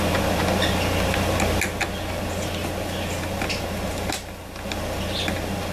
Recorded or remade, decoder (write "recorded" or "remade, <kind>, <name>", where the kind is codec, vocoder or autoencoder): recorded